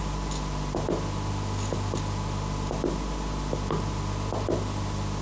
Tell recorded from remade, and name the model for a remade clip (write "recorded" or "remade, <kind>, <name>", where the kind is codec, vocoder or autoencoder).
recorded